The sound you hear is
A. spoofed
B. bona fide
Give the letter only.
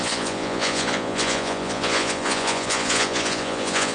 A